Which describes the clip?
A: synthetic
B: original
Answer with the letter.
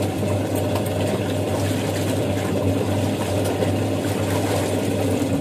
B